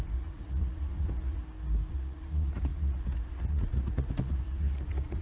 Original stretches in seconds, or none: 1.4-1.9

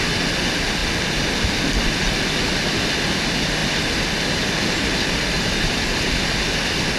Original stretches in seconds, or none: 0.0-7.0

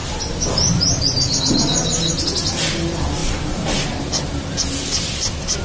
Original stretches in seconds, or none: 0.0-5.6

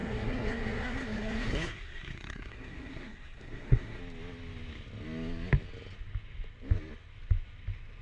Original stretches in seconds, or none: 4.0-8.0